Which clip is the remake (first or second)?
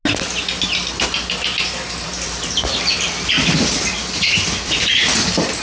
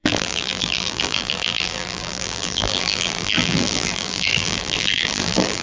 second